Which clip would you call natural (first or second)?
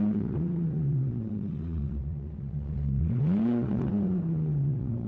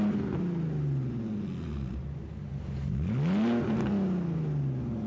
second